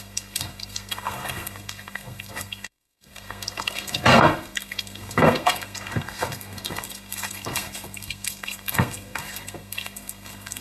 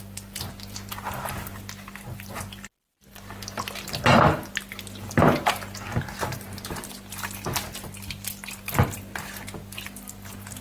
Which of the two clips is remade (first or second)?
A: first